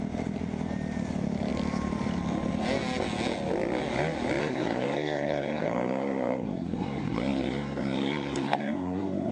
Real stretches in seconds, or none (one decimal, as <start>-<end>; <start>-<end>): 0.0-4.4